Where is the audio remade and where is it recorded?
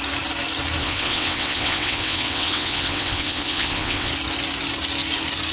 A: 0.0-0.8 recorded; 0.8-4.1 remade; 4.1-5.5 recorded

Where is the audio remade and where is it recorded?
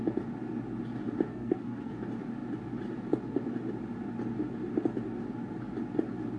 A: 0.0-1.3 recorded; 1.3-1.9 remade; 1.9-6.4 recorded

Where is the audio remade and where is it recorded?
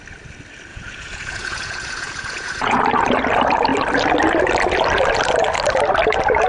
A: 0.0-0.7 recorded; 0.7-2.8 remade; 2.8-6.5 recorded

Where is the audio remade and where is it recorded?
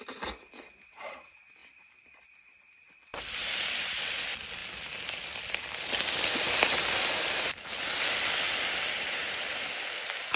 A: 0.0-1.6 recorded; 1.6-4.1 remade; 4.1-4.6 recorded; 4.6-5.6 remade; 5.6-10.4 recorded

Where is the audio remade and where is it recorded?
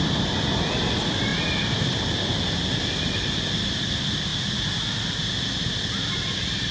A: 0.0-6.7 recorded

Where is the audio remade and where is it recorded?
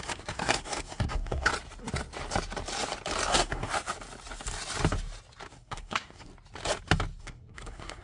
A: 0.0-1.5 remade; 1.5-3.3 recorded; 3.3-3.7 remade; 3.7-5.5 recorded; 5.5-6.3 remade; 6.3-7.2 recorded; 7.2-8.0 remade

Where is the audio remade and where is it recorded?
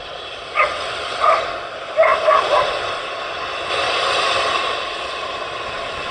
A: 0.0-6.1 recorded